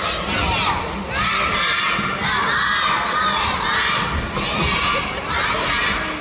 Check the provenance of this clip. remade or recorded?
recorded